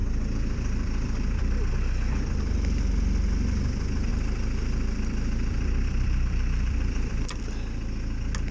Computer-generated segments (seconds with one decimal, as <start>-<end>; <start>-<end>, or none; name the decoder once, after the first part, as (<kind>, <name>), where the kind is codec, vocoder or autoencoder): 0.0-1.7 (vocoder, BigVGAN v2); 4.1-7.4